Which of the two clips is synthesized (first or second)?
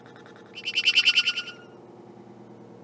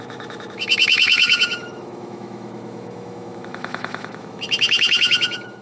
second